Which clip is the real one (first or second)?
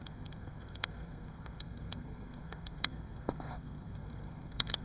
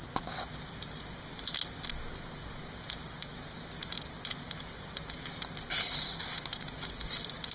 second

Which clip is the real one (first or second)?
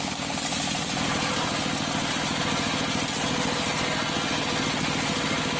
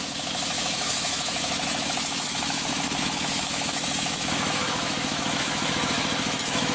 first